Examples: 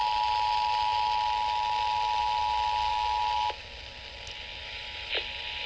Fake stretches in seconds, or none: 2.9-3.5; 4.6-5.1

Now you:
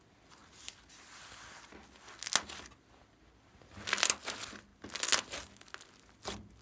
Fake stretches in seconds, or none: none

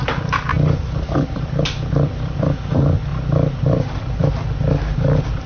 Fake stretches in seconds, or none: none

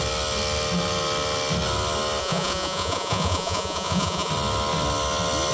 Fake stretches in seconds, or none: 2.2-4.3

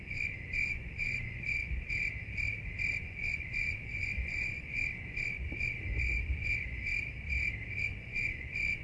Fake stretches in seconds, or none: 0.0-1.6; 3.0-6.9; 7.8-8.8

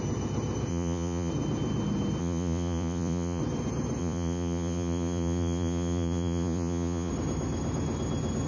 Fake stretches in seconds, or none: 0.7-1.3; 2.2-3.4; 4.0-7.1

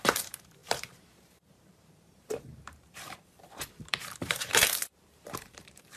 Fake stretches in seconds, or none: 0.0-6.0

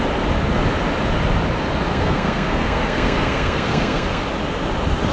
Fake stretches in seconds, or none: 1.9-4.2